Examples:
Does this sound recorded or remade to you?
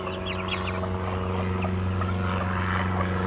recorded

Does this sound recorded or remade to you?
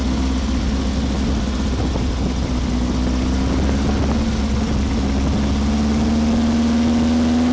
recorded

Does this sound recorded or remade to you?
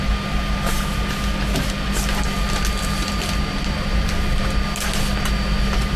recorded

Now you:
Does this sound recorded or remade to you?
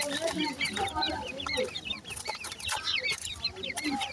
remade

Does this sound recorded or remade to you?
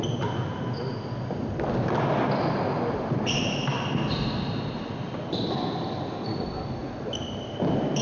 recorded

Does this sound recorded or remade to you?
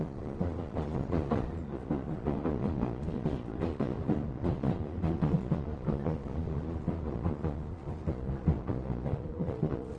remade